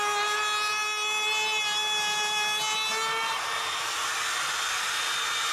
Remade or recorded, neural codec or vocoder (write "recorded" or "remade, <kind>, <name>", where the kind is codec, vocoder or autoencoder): recorded